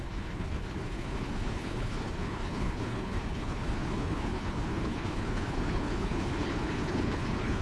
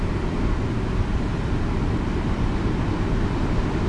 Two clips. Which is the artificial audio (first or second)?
first